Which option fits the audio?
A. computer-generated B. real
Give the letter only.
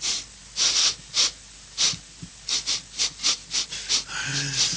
B